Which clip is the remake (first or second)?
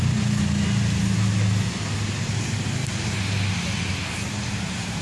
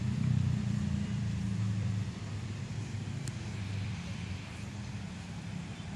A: second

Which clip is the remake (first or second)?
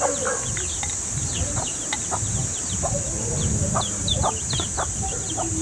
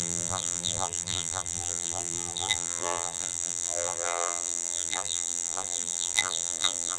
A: second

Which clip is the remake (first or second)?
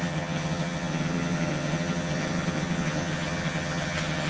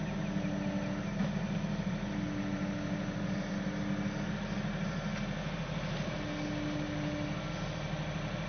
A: first